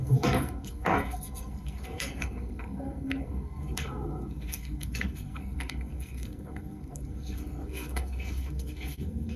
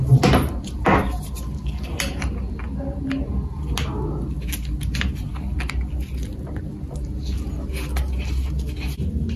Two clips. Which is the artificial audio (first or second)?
first